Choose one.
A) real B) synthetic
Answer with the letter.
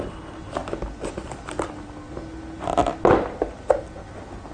A